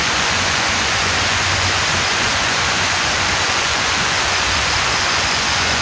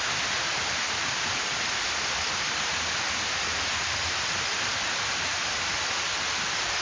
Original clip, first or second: second